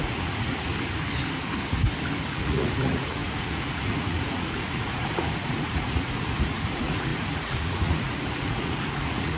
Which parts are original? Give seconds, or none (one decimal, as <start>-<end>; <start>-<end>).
0.7-2.3